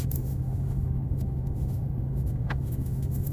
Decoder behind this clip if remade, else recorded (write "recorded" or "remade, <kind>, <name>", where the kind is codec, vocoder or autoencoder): remade, autoencoder, DAC-VAE